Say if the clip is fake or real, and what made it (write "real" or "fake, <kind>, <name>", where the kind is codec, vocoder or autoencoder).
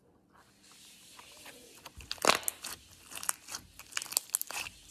real